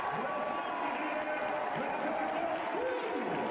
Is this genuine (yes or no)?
yes